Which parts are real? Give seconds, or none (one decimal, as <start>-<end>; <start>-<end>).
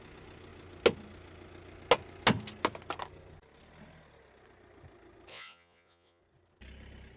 0.0-5.3; 6.2-7.2